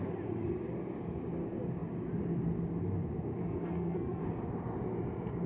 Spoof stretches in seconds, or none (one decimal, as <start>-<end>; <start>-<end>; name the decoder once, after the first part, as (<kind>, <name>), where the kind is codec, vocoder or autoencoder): 3.4-4.2 (codec, SNAC)